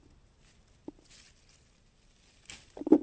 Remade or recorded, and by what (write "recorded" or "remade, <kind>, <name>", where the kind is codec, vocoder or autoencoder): recorded